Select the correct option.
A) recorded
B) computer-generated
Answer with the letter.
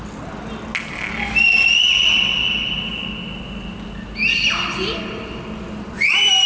A